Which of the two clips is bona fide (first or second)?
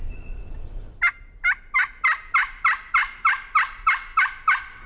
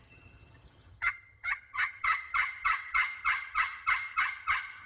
first